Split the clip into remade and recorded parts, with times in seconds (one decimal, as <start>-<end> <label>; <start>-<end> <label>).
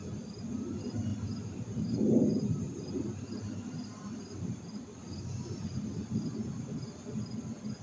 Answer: 0.0-1.1 recorded; 1.1-5.8 remade; 5.8-6.4 recorded; 6.4-7.0 remade; 7.0-7.8 recorded